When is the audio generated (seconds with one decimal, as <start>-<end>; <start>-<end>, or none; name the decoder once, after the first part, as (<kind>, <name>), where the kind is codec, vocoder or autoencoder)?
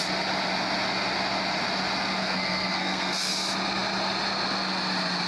2.2-3.3 (codec, SNAC)